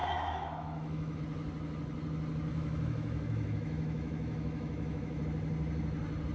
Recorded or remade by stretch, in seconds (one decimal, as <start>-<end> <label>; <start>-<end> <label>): 0.0-1.2 remade; 1.2-2.5 recorded; 2.5-5.2 remade; 5.2-6.3 recorded